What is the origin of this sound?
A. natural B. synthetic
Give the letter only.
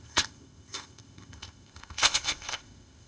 B